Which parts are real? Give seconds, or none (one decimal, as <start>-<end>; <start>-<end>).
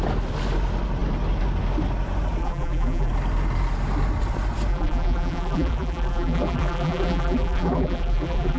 0.0-2.4; 3.1-4.7